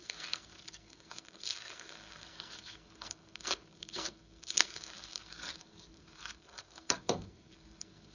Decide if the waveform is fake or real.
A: fake